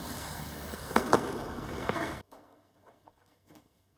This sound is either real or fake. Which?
fake